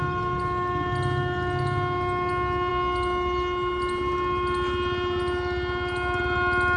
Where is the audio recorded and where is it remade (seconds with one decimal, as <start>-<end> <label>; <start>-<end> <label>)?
0.0-6.8 recorded